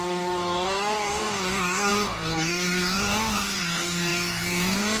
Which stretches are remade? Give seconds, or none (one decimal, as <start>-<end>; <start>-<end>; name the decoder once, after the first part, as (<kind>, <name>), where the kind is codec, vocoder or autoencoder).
0.0-5.0 (codec, DAC)